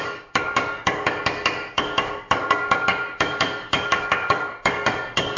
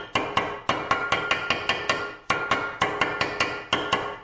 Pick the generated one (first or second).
first